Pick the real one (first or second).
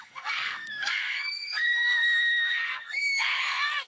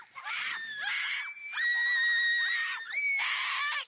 second